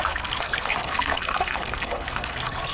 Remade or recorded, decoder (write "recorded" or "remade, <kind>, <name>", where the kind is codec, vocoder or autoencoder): remade, codec, SNAC